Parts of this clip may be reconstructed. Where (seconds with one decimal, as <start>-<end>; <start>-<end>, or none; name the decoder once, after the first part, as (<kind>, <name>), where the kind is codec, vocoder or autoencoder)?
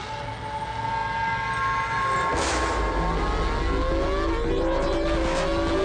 none